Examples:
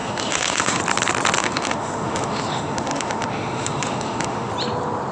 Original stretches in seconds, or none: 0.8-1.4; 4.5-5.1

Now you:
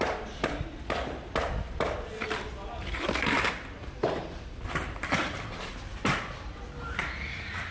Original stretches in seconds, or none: none

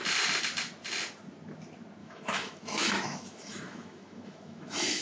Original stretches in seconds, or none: 0.0-2.0

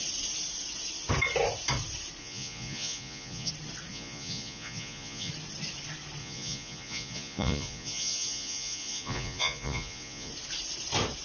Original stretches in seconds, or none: 0.0-2.2; 3.5-3.9; 5.3-6.2; 10.3-11.2

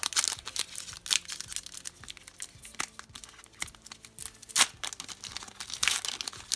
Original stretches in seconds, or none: 0.0-6.6

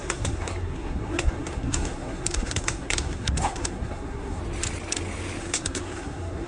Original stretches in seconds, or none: 4.4-5.4

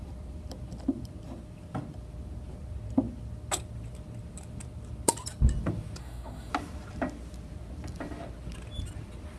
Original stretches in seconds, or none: 0.0-6.0; 6.5-9.4